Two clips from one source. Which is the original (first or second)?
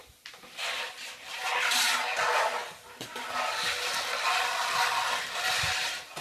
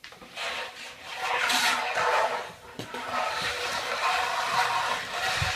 first